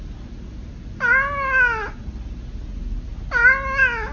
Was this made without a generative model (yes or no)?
yes